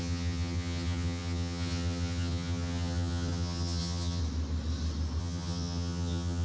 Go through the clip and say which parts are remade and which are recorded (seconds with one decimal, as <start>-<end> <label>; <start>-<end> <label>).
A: 0.0-4.2 remade; 4.2-5.2 recorded; 5.2-6.4 remade